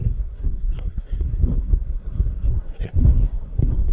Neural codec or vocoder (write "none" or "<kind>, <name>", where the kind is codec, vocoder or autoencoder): codec, SNAC